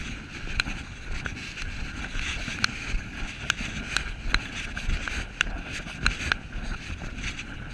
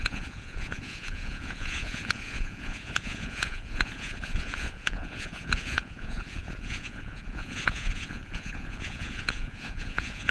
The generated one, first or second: second